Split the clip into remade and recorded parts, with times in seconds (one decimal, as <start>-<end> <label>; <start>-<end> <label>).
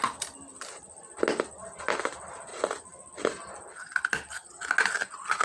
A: 0.0-5.4 recorded